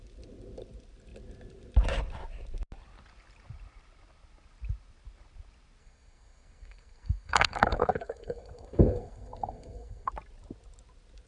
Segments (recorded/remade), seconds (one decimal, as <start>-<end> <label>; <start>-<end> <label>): 0.0-5.8 recorded; 5.8-10.1 remade; 10.1-11.3 recorded